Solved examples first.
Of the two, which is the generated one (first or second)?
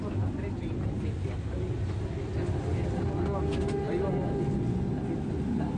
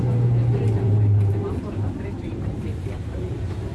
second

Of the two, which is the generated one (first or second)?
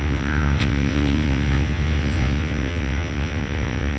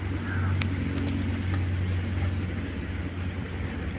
first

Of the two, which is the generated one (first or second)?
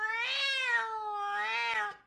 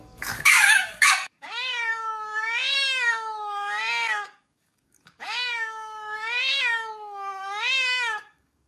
second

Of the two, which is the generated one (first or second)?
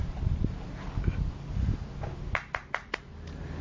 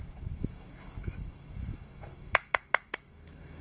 second